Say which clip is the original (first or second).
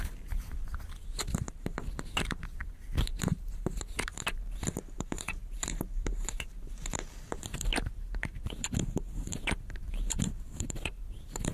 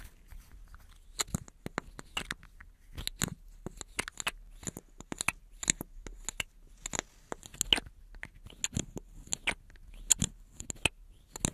second